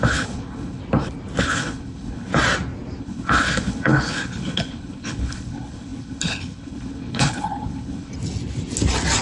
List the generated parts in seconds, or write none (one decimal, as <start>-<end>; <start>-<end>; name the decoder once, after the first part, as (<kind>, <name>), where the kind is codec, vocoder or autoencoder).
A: 0.0-0.8 (codec, HILCodec); 1.4-2.3; 3.0-8.1